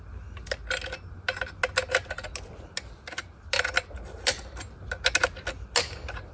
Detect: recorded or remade recorded